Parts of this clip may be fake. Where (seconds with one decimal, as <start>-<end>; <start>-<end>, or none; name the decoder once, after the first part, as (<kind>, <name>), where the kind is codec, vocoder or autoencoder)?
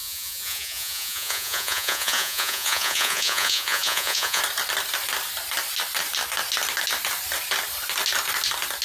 0.0-4.4 (vocoder, Vocos)